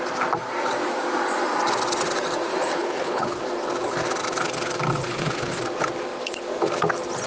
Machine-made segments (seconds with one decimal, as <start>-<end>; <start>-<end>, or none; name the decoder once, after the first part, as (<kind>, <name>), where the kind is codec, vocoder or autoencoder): 2.5-3.4 (codec, HILCodec); 5.0-5.6